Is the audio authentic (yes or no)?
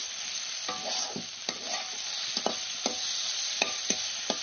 yes